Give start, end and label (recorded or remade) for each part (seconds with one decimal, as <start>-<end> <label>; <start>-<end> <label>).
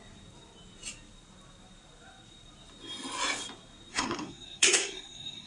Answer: 0.0-3.9 recorded; 3.9-5.5 remade